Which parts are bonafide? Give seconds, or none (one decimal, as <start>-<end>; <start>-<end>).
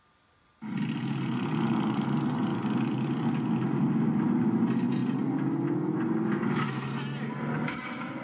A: 0.0-8.2